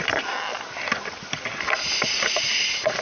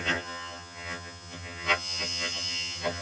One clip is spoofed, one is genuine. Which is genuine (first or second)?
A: first